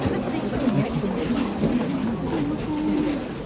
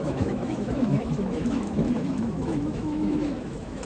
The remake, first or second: second